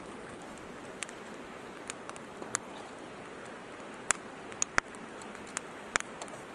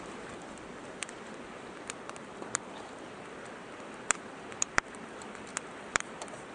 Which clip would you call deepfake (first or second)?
second